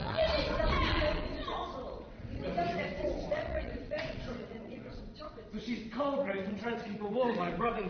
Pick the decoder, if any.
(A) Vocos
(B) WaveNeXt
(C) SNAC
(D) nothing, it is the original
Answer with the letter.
B